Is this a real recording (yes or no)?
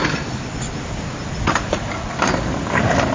yes